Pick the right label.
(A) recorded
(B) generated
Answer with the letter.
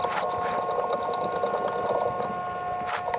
A